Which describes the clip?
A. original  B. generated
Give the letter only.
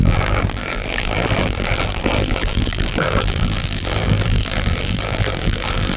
B